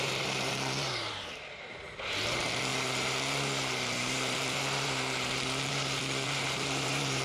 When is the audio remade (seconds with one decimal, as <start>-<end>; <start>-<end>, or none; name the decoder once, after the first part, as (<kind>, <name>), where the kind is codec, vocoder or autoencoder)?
0.0-7.2 (vocoder, BigVGAN v2)